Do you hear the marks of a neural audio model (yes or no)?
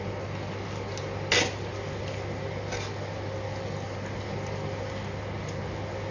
no